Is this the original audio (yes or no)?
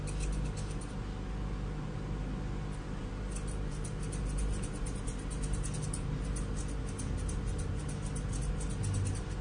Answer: yes